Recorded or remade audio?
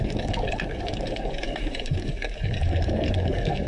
remade